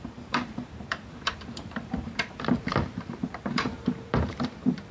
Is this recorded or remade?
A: remade